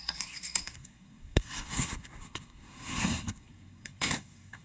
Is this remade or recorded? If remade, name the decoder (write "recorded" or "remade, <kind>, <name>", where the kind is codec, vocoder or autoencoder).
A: remade, codec, SNAC